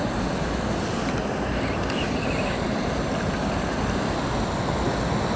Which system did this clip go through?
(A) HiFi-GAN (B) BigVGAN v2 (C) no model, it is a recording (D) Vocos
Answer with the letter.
C